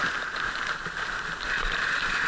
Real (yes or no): yes